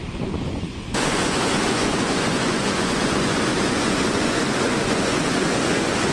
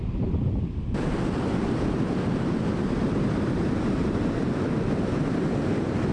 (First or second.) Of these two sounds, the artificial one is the first